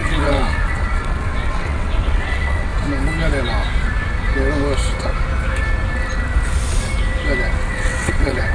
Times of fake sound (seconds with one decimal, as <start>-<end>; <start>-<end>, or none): 0.0-2.7; 7.7-8.5